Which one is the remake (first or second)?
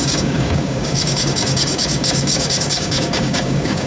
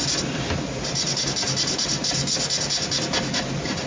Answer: first